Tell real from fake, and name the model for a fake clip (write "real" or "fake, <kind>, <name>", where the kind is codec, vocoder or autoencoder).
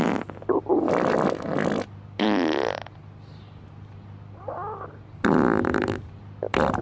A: real